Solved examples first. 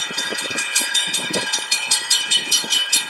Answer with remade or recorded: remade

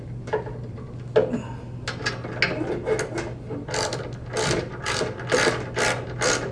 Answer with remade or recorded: recorded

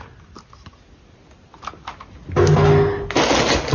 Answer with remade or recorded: recorded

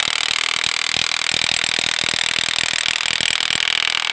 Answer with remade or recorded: recorded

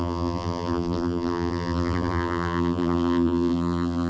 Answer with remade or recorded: remade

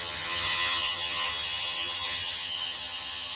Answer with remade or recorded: remade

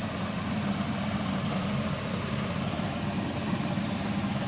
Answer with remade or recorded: recorded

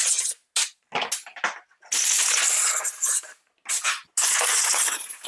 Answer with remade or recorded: recorded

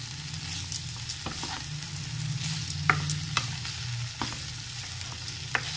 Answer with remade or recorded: recorded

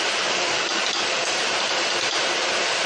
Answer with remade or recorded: remade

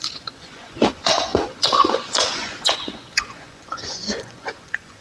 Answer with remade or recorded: remade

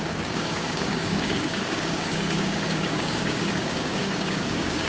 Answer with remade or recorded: remade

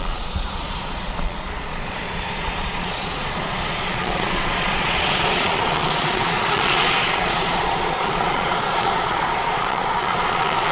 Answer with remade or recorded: remade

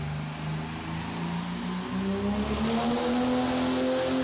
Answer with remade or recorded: recorded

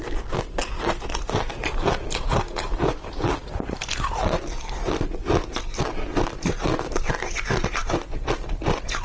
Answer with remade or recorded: recorded